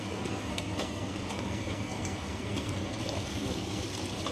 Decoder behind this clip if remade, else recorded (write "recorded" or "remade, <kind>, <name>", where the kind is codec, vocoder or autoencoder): remade, codec, SNAC